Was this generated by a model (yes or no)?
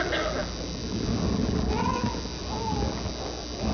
no